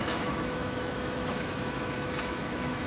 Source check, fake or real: fake